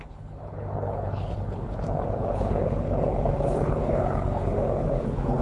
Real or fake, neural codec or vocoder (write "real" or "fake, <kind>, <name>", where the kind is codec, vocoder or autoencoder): fake, codec, HILCodec